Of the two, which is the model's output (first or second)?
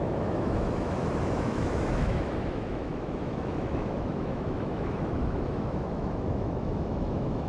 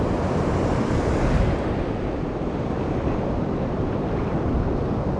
first